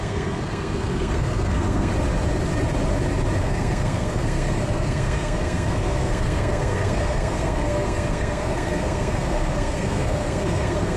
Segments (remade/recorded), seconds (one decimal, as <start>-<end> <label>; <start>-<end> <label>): 0.0-1.9 remade; 1.9-3.4 recorded; 3.4-11.0 remade

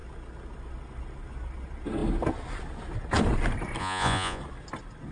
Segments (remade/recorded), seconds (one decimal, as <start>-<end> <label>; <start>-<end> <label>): 0.0-3.8 recorded; 3.8-4.4 remade; 4.4-5.1 recorded

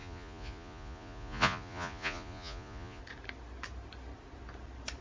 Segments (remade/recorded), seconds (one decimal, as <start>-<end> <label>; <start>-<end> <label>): 0.0-3.0 remade; 3.0-5.0 recorded

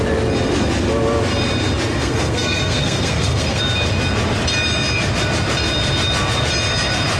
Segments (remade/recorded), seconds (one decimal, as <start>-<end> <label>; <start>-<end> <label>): 0.0-1.9 recorded; 1.9-3.6 remade; 3.6-7.2 recorded